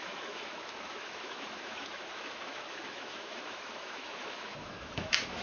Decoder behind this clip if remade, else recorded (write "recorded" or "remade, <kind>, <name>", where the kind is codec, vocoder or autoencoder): remade, autoencoder, DAC-VAE